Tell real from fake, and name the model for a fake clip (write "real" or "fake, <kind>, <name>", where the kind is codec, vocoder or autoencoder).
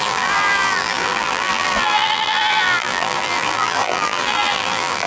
fake, vocoder, BigVGAN v2